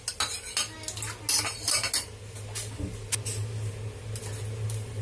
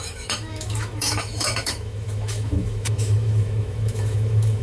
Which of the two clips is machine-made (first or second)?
second